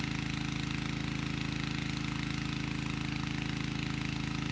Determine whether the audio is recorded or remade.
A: recorded